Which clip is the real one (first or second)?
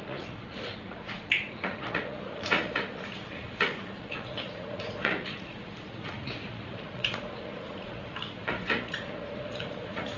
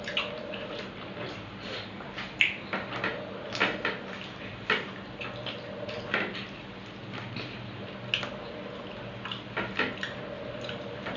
second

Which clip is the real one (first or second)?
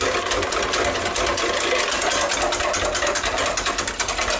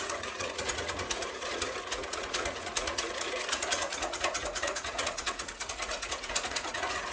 first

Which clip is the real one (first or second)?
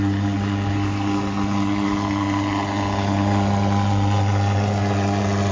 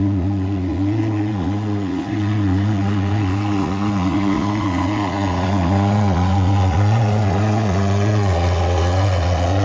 first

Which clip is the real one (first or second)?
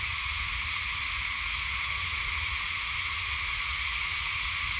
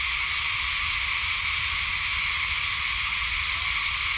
second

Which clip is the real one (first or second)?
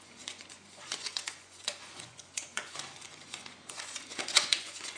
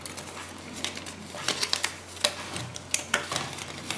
second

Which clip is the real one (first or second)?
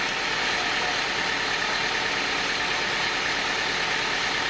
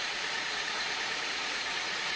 first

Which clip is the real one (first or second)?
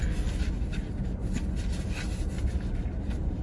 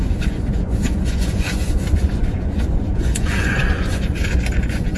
first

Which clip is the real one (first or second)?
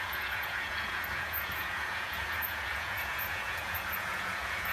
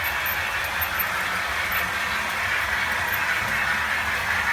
second